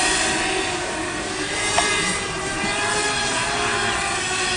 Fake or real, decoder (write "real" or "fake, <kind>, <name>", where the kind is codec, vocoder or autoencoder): real